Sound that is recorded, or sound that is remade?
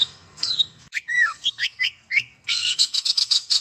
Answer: remade